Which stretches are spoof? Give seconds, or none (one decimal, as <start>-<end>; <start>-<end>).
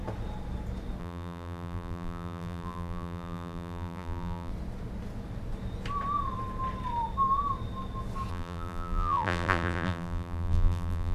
1.0-4.5; 8.3-11.1